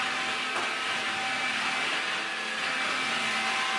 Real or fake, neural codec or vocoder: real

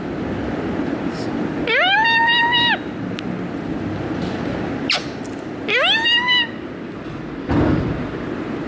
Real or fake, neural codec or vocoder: real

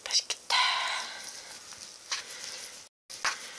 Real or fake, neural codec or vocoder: real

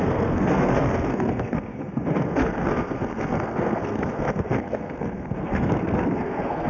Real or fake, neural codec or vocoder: fake, codec, SNAC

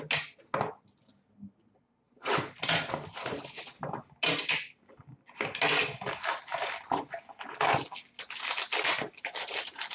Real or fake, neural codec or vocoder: real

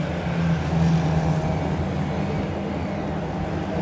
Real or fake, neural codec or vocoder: real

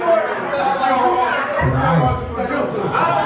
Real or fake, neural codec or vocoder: real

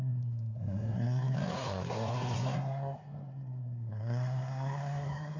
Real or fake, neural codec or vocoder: fake, codec, SNAC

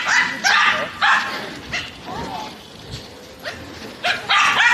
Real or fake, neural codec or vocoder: real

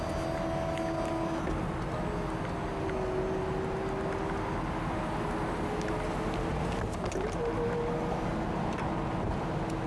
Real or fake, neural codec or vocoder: real